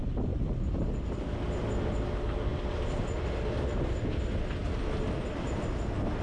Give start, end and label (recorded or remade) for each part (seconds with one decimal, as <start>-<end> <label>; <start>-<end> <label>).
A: 0.0-6.2 recorded